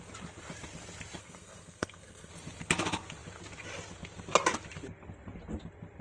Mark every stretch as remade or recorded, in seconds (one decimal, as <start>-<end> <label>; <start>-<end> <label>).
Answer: 0.0-1.2 recorded; 1.2-2.3 remade; 2.3-6.0 recorded